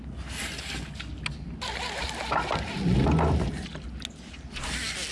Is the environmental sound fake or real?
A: real